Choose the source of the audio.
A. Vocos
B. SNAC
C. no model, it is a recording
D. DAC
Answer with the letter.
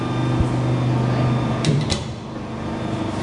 C